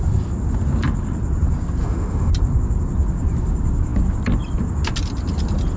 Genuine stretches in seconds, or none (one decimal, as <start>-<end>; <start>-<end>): 0.0-1.8; 2.3-5.8